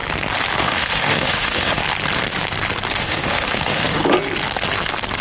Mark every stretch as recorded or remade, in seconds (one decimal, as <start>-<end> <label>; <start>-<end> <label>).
0.0-0.6 recorded; 0.6-1.8 remade; 1.8-3.0 recorded; 3.0-4.0 remade; 4.0-5.2 recorded

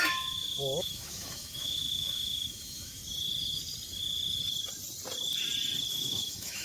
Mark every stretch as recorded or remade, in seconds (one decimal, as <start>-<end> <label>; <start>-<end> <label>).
0.0-3.0 remade; 3.0-5.9 recorded; 5.9-6.6 remade

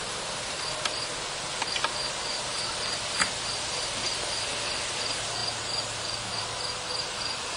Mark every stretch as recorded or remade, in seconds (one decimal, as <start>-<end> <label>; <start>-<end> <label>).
0.0-7.6 recorded